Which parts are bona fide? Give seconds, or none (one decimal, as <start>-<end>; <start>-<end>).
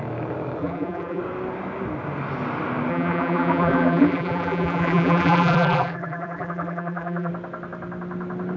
0.0-0.6; 1.2-2.9; 7.3-8.6